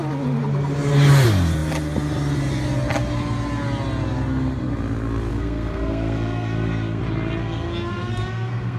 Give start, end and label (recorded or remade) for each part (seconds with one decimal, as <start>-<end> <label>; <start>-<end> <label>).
0.0-5.3 recorded; 5.3-7.0 remade; 7.0-7.4 recorded; 7.4-8.8 remade